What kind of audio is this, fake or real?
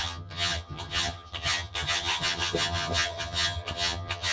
fake